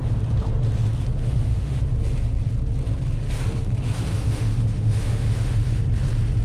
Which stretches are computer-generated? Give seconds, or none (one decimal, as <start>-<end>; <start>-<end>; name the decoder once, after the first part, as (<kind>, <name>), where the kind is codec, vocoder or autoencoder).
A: 1.2-1.8 (autoencoder, DAC-VAE); 4.1-5.8